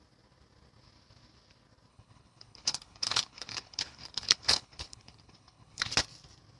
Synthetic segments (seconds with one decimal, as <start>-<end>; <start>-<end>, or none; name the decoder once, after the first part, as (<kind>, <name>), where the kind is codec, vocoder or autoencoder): 1.9-5.9 (codec, HILCodec)